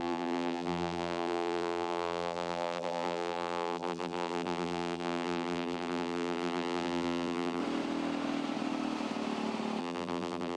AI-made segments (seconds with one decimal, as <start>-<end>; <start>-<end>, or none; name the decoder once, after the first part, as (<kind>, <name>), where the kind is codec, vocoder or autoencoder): 0.0-7.6 (vocoder, BigVGAN v2); 9.8-10.6